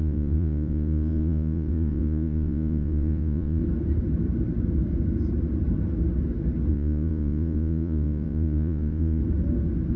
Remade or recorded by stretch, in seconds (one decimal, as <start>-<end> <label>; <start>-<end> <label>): 0.0-3.6 remade; 3.6-6.7 recorded; 6.7-9.2 remade; 9.2-10.0 recorded